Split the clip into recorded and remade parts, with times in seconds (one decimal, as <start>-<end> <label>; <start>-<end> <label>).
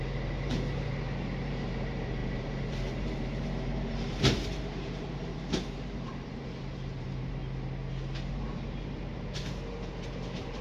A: 0.0-7.4 remade; 7.4-8.3 recorded; 8.3-10.6 remade